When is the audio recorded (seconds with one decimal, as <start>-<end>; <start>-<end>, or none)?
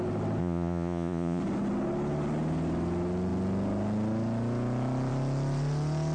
0.0-0.4; 1.4-6.1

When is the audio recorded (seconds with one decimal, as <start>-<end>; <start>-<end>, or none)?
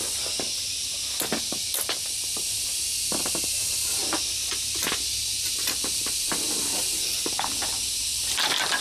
0.0-8.8